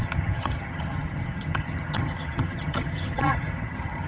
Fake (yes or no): yes